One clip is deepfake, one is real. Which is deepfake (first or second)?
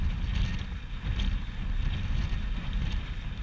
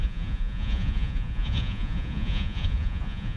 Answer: second